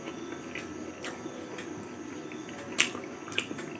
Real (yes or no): yes